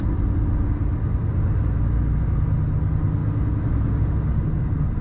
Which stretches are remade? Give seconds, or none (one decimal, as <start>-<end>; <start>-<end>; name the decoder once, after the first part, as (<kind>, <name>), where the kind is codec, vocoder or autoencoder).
none